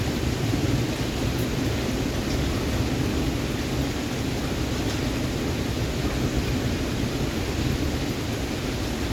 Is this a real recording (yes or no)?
yes